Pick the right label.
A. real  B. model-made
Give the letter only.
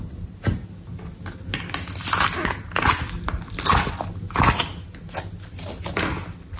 A